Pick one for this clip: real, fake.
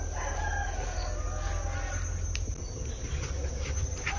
real